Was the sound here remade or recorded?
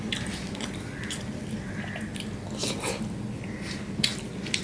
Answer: recorded